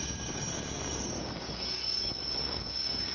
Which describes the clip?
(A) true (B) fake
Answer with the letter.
B